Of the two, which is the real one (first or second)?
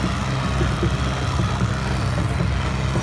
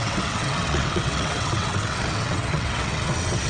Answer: first